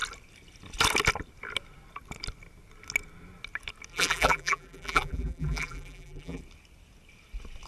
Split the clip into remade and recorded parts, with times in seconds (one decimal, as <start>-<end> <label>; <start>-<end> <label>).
0.0-3.9 recorded; 3.9-6.4 remade; 6.4-7.7 recorded